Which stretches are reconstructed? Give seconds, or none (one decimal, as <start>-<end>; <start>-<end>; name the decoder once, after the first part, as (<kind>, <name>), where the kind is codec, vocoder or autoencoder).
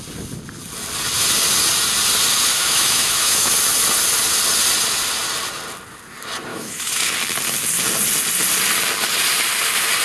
2.5-3.5 (autoencoder, DAC-VAE); 6.5-7.1